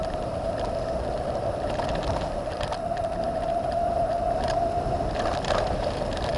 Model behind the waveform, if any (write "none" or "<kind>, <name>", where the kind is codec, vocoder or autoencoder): vocoder, BigVGAN v2